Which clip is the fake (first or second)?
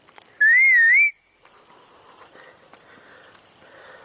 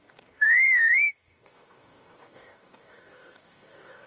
second